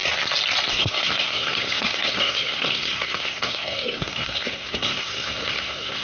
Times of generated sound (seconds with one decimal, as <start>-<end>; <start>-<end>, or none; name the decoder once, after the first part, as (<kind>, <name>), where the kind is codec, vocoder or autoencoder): 0.7-6.0 (codec, SNAC)